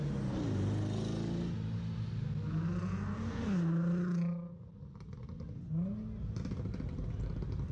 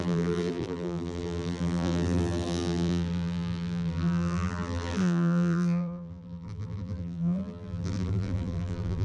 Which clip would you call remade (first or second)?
second